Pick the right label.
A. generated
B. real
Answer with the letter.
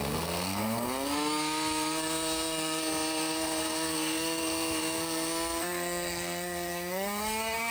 A